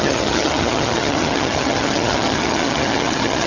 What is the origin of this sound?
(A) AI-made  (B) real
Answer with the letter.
A